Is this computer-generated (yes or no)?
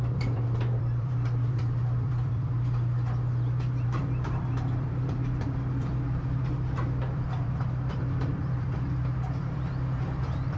yes